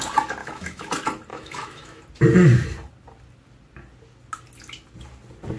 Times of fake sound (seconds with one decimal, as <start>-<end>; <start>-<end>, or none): 0.4-0.9; 1.3-2.0